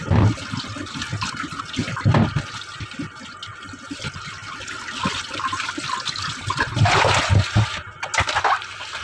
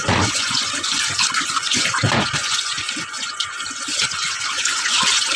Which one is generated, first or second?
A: second